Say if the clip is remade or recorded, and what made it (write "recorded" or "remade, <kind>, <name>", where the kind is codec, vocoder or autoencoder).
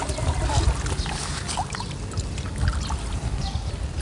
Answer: recorded